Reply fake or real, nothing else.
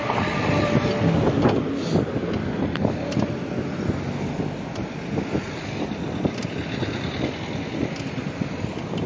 real